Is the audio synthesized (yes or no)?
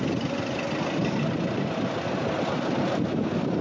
no